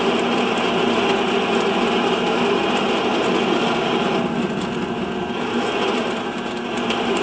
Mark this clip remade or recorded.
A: recorded